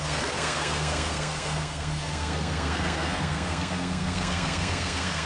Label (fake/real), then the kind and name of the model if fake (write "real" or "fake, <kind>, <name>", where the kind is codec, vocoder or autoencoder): fake, codec, SNAC